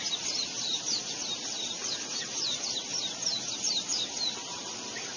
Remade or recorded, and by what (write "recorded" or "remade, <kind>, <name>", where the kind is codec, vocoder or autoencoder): recorded